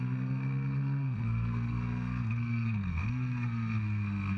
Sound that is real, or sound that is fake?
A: fake